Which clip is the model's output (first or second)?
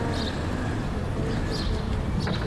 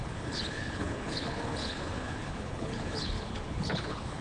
second